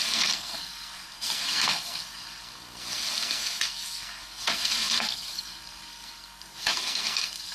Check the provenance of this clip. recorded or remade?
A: remade